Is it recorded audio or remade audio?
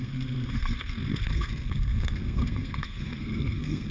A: remade